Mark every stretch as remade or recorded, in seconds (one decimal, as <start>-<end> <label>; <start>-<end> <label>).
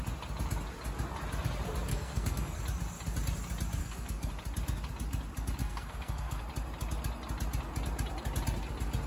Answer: 0.0-1.9 recorded; 1.9-2.6 remade; 2.6-3.8 recorded; 3.8-4.3 remade; 4.3-5.6 recorded; 5.6-6.4 remade; 6.4-9.1 recorded